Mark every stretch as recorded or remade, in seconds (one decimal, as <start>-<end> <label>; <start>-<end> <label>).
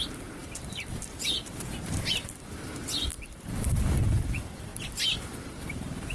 0.0-0.4 recorded; 0.4-1.0 remade; 1.0-3.1 recorded; 3.1-4.0 remade; 4.0-6.1 recorded